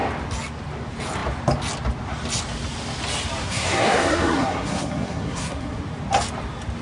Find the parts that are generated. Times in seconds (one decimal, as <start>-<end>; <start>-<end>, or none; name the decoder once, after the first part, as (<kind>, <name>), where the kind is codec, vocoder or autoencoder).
3.4-5.8 (codec, SNAC)